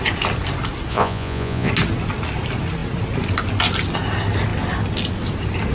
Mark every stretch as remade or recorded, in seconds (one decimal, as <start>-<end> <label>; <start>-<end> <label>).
0.0-0.9 recorded; 0.9-1.7 remade; 1.7-5.7 recorded